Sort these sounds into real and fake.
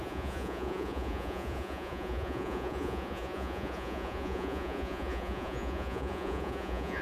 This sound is fake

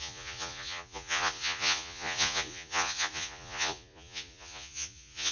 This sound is fake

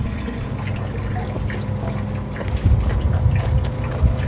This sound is real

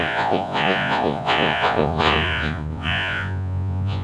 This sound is fake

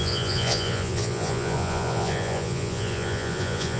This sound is fake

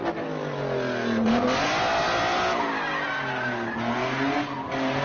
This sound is real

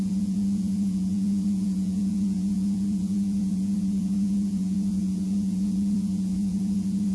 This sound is fake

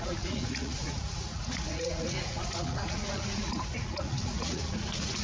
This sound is fake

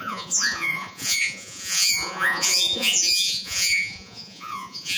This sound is fake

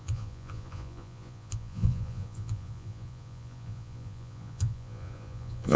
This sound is fake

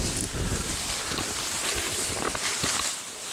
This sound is real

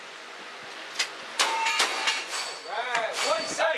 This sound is fake